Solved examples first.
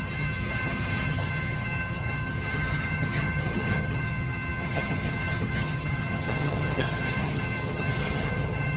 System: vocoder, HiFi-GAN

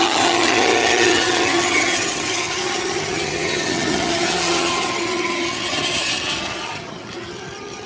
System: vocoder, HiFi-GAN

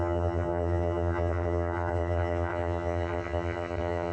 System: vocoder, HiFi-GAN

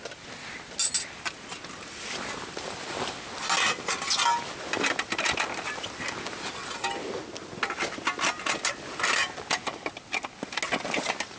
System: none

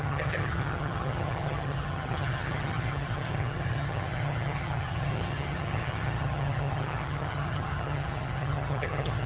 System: vocoder, HiFi-GAN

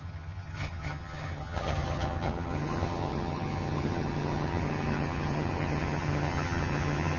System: vocoder, HiFi-GAN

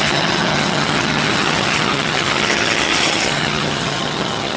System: vocoder, HiFi-GAN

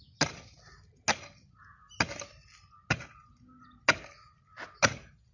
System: none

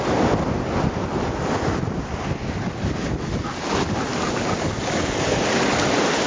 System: none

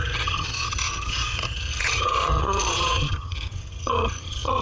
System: vocoder, HiFi-GAN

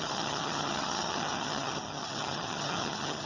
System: vocoder, HiFi-GAN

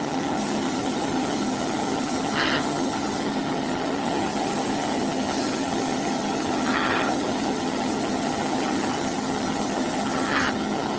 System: vocoder, HiFi-GAN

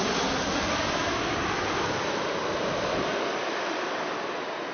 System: none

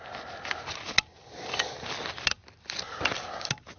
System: none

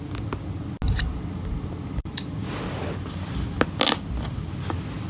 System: none